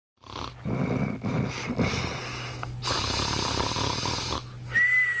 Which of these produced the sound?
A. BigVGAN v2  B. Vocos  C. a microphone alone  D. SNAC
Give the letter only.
C